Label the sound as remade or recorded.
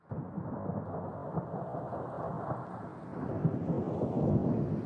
recorded